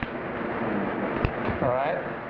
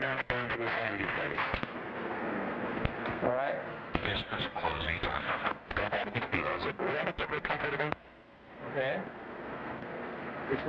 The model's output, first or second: second